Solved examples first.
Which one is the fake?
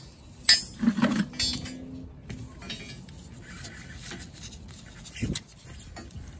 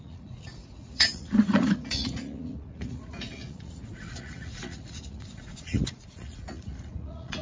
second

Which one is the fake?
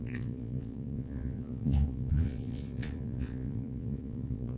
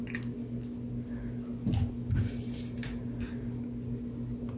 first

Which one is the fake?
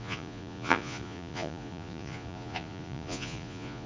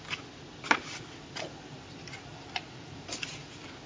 first